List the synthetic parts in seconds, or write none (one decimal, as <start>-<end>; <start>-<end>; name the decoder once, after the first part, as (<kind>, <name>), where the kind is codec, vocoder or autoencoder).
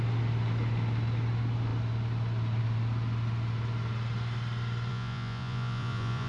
4.9-6.3 (vocoder, Vocos)